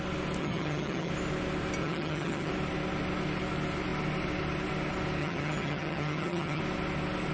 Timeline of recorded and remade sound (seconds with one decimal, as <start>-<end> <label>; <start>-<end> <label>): 0.0-0.4 recorded; 0.4-1.1 remade; 1.1-1.8 recorded; 1.8-2.5 remade; 2.5-5.2 recorded; 5.2-6.6 remade; 6.6-7.3 recorded